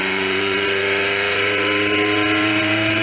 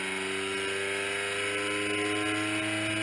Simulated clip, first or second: first